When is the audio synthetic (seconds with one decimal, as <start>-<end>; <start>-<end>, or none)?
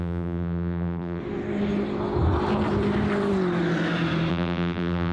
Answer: 0.0-1.2; 4.3-5.1